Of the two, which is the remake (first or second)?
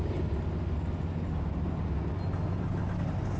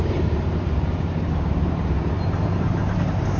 second